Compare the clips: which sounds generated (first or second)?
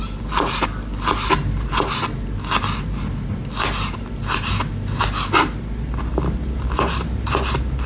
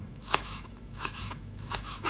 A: second